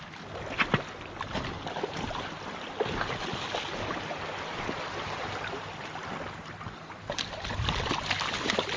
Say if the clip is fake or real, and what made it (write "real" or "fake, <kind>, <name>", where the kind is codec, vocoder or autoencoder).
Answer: real